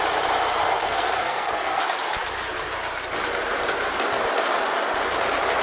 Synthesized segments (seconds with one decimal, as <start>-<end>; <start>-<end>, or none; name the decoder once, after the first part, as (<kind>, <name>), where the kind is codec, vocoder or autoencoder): 0.7-1.8 (codec, SNAC)